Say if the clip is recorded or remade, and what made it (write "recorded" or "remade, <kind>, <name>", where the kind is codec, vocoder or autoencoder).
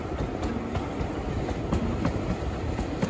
recorded